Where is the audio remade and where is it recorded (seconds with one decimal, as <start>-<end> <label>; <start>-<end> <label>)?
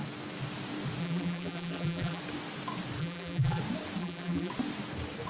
0.0-1.0 recorded; 1.0-2.2 remade; 2.2-3.0 recorded; 3.0-3.6 remade; 3.6-4.0 recorded; 4.0-4.5 remade; 4.5-5.3 recorded